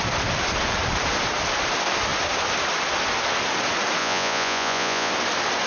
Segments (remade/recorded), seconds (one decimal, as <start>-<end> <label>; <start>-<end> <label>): 0.0-4.0 recorded; 4.0-5.1 remade; 5.1-5.7 recorded